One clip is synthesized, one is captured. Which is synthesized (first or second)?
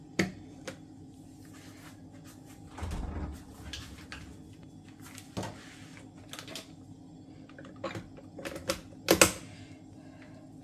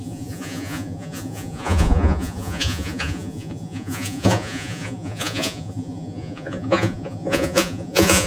second